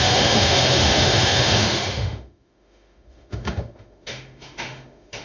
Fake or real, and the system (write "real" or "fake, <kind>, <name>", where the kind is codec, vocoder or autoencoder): fake, autoencoder, DAC-VAE